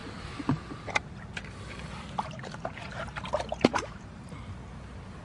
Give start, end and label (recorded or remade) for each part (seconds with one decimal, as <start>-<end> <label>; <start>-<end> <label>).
0.0-3.7 recorded; 3.7-4.3 remade; 4.3-5.2 recorded